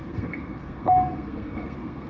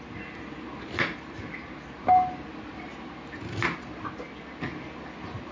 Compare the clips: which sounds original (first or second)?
second